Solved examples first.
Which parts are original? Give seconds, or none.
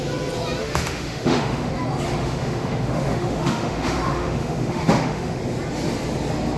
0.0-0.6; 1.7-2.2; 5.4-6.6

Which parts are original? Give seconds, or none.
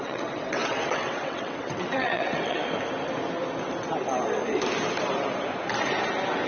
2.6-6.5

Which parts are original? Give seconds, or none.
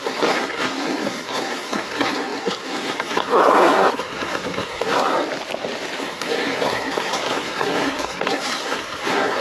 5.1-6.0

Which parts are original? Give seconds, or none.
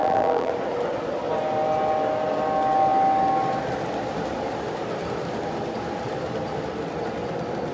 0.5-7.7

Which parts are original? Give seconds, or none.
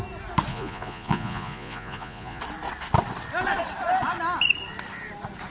0.0-0.5; 2.4-5.5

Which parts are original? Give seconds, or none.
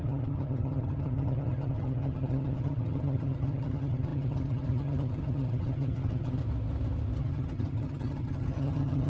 6.4-7.2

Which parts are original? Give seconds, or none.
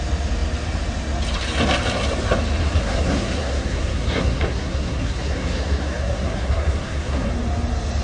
0.0-2.6; 7.3-8.0